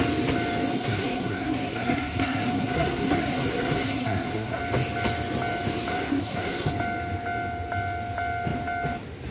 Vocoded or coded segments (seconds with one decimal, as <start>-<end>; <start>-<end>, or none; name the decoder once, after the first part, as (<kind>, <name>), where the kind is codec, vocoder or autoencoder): 0.7-4.6 (codec, SNAC); 5.9-6.7